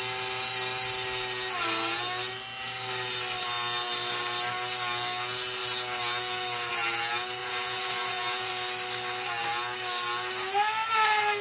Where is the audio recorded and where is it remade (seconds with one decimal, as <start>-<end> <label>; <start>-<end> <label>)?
0.0-7.4 recorded; 7.4-8.5 remade; 8.5-11.4 recorded